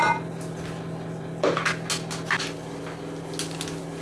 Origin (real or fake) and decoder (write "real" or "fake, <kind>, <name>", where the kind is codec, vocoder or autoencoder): real